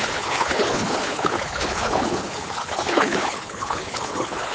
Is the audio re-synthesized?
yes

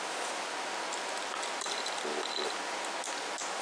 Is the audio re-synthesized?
no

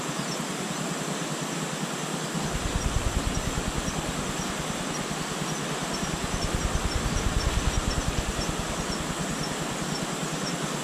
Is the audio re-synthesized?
no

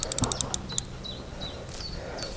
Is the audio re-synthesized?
no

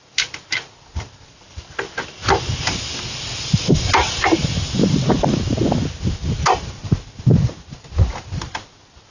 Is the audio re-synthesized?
no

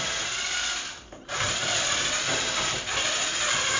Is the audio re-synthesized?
no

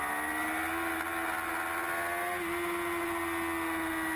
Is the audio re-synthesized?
no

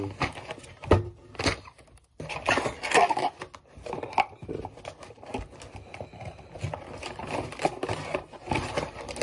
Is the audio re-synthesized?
no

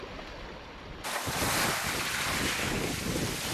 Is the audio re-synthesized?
no